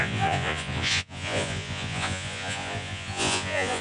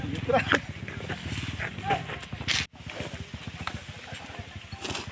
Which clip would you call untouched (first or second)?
second